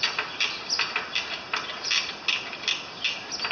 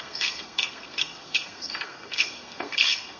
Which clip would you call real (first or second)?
first